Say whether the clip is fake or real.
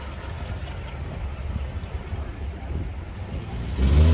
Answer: real